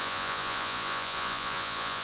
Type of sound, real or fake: fake